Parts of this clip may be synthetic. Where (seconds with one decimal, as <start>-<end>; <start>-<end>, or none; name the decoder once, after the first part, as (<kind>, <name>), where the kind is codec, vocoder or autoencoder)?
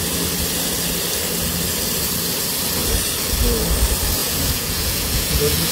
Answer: 4.2-5.7 (vocoder, Vocos)